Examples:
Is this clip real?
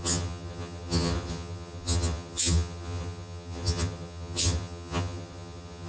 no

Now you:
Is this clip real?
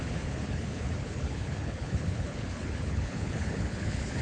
no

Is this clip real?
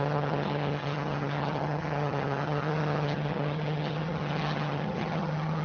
no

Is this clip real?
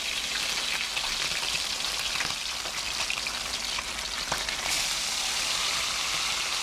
yes